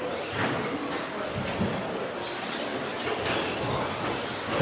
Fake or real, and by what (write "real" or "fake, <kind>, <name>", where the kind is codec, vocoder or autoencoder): real